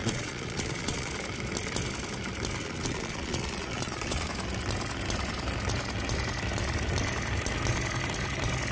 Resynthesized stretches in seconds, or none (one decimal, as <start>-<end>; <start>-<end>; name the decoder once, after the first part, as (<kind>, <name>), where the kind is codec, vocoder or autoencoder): 0.0-1.1 (vocoder, Vocos); 2.6-4.3